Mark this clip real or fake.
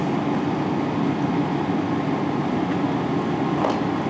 real